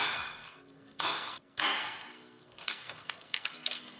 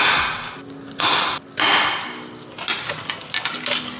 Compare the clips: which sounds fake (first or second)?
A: first